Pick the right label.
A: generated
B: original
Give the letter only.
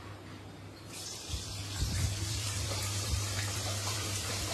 A